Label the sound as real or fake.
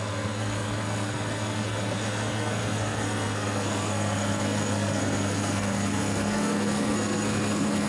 fake